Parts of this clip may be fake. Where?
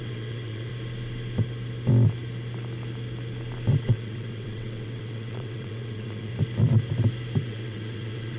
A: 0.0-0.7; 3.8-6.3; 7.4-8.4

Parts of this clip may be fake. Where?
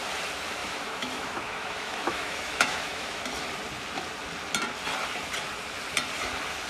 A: 0.6-3.2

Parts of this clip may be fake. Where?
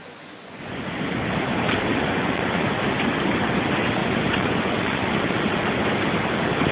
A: 0.0-0.8; 1.9-2.8; 4.0-5.4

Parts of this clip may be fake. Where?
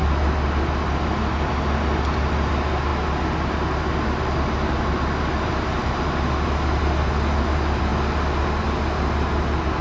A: none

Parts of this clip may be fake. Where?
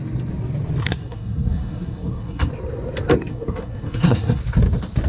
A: 0.8-2.5; 3.3-4.4